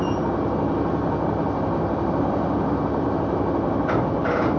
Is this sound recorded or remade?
recorded